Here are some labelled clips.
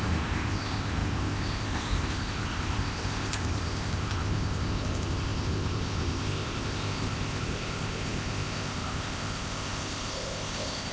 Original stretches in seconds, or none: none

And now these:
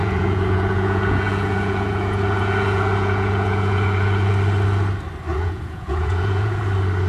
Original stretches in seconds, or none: 4.3-5.3; 6.6-7.1

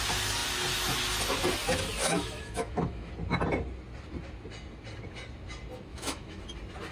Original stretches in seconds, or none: 0.0-2.0; 3.1-5.9; 6.4-6.9

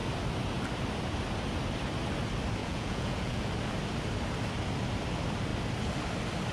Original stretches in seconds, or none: 0.0-2.6; 3.5-6.5

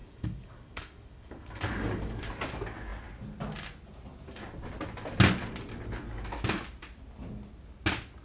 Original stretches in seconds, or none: 2.2-8.2